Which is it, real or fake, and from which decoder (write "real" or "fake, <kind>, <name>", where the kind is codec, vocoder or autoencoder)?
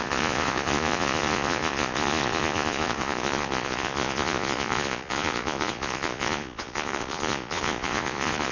fake, vocoder, Vocos